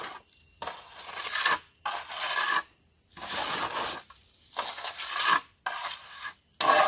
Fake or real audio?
real